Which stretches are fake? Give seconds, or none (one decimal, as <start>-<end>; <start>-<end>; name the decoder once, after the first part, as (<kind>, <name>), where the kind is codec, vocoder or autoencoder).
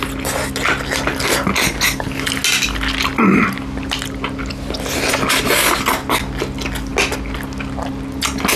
none